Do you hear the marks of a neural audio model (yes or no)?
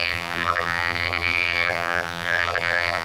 yes